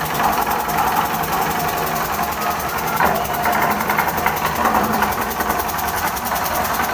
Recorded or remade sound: remade